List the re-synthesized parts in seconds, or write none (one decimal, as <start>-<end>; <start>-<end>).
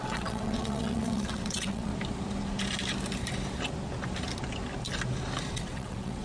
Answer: 0.0-1.9; 5.5-6.2